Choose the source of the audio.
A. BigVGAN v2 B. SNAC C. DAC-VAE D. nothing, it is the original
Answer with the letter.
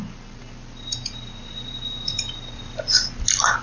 D